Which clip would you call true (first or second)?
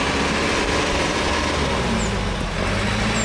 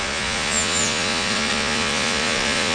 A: first